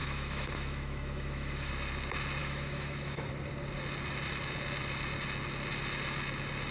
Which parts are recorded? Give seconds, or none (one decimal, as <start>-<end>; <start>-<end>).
1.7-2.4; 3.3-6.7